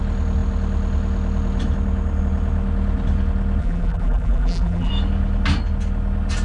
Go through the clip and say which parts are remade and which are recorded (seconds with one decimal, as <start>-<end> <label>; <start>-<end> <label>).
0.0-3.6 recorded; 3.6-4.9 remade; 4.9-6.4 recorded